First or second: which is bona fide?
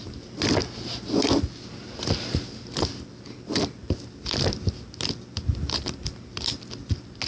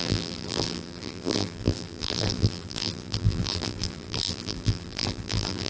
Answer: first